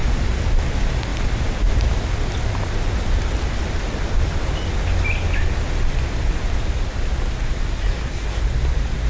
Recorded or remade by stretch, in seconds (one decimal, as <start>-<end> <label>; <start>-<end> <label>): 0.0-7.8 recorded; 7.8-8.4 remade; 8.4-9.1 recorded